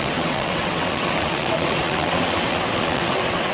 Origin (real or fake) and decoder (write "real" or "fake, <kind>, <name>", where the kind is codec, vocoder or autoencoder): fake, vocoder, WaveNeXt